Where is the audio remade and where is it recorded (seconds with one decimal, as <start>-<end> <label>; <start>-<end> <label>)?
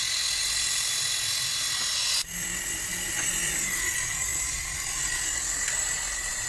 0.0-0.4 recorded; 0.4-0.9 remade; 0.9-4.3 recorded; 4.3-4.8 remade; 4.8-6.5 recorded